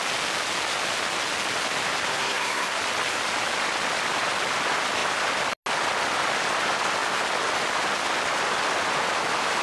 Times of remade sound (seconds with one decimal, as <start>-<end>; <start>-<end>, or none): 2.1-2.8